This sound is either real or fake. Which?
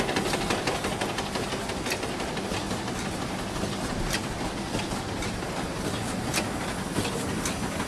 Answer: real